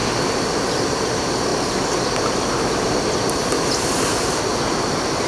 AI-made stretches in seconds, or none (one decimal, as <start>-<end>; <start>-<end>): none